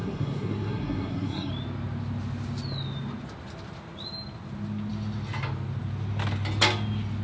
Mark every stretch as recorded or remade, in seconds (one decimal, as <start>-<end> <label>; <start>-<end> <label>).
0.0-1.5 remade; 1.5-7.2 recorded